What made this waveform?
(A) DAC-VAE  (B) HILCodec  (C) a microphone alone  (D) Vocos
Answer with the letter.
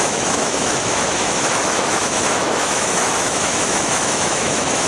A